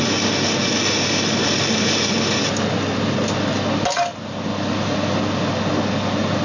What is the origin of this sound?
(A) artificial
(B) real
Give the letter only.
B